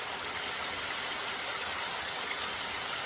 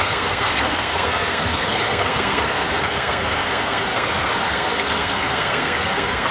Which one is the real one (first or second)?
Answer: first